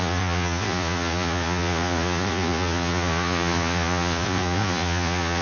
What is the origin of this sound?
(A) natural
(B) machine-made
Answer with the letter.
B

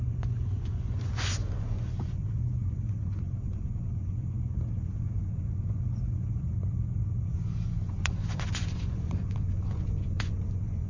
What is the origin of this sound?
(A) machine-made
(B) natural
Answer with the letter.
A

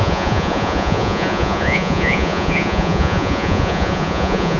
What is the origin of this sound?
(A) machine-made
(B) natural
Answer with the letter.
A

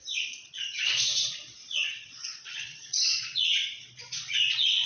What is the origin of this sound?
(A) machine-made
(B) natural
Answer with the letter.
A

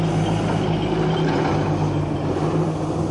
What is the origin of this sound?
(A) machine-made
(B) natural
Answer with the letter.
B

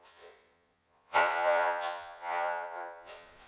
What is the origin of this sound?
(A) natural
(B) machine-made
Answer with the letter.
B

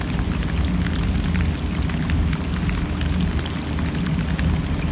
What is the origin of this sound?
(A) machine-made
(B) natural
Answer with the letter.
B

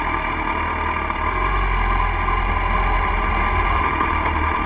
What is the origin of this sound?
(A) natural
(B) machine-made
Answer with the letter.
A